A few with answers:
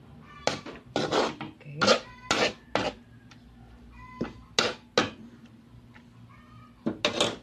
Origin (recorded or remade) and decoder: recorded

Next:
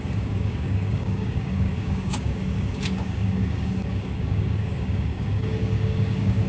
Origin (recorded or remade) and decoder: remade, codec, DAC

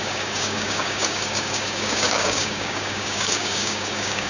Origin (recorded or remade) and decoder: remade, codec, DAC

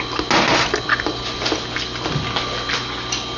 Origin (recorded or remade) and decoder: recorded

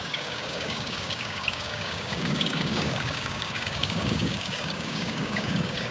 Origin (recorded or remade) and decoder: remade, codec, DAC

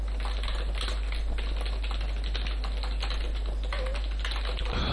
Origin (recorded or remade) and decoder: recorded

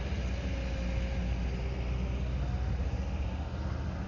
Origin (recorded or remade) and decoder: recorded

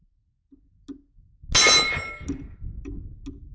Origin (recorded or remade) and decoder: recorded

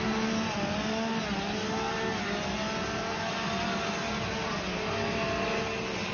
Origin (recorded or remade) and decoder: recorded